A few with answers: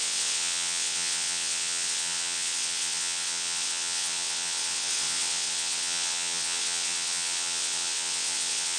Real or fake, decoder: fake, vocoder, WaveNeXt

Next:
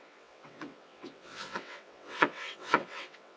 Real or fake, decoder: fake, vocoder, WaveNeXt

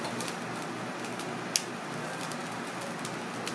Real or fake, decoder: real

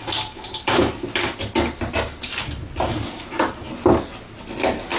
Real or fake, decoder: real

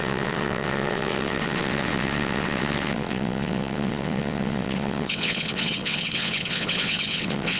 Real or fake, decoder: fake, vocoder, WaveNeXt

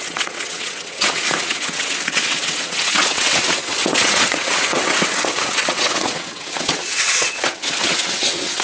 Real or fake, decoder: fake, vocoder, WaveNeXt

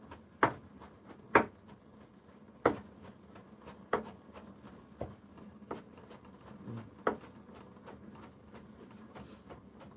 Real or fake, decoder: real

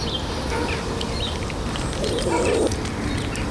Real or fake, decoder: real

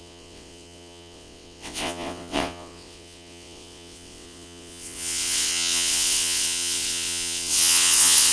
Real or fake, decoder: fake, vocoder, WaveNeXt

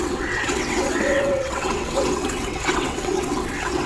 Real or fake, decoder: fake, vocoder, WaveNeXt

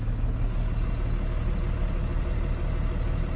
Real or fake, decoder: real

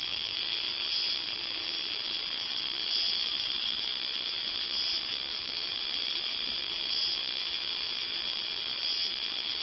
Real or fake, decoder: fake, vocoder, WaveNeXt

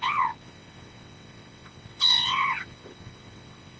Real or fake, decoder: fake, vocoder, WaveNeXt